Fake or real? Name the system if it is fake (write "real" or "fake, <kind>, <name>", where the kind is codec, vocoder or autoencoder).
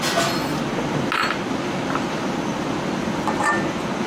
real